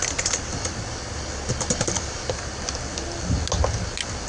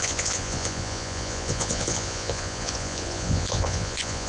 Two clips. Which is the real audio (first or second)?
first